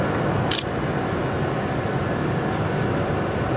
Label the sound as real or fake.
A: real